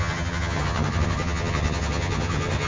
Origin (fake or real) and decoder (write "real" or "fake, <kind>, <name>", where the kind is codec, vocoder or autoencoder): fake, vocoder, HiFi-GAN